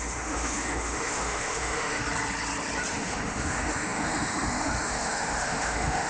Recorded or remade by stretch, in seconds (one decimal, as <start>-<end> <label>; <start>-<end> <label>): 0.0-2.0 remade; 2.0-2.9 recorded; 2.9-6.1 remade